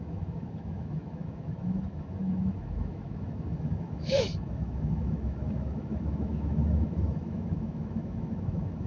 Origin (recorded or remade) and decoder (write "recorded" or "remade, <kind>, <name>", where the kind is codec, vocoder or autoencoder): remade, autoencoder, DAC-VAE